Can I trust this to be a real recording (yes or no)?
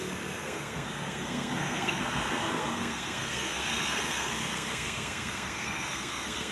no